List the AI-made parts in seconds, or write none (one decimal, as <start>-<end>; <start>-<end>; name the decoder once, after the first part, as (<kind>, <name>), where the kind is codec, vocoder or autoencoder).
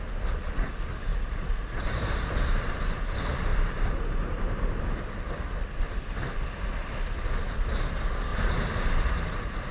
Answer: 1.1-3.0 (vocoder, BigVGAN v2); 3.5-4.8; 8.3-9.1